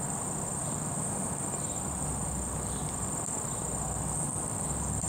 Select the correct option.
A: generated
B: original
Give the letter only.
B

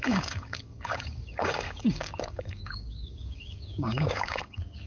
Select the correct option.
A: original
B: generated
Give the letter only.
B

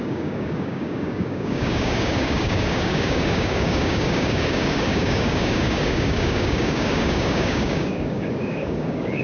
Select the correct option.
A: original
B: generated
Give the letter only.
B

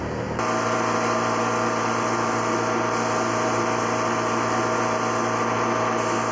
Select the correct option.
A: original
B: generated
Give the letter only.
A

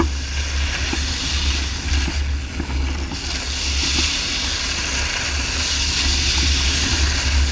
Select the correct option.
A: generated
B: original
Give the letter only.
B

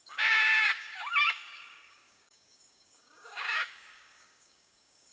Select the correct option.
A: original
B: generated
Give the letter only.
B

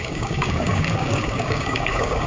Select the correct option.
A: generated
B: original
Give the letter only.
A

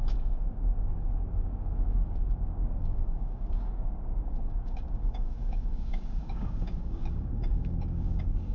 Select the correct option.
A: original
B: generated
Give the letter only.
B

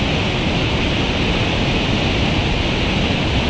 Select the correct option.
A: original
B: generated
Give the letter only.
A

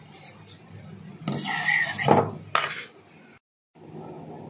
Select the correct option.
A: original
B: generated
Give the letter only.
A